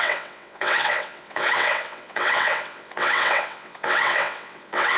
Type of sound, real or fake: fake